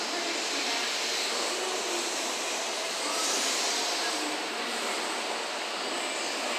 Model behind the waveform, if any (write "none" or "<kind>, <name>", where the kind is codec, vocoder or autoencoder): none